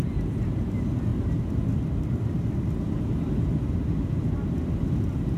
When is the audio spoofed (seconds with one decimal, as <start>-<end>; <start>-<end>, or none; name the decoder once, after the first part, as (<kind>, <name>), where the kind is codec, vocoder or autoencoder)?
none